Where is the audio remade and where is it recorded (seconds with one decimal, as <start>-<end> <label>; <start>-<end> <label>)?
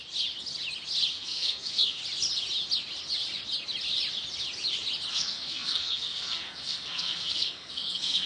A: 0.0-1.1 recorded; 1.1-2.0 remade; 2.0-5.1 recorded; 5.1-8.3 remade